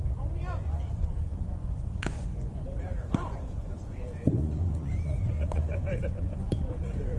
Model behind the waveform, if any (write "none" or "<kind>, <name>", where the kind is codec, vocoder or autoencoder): vocoder, Vocos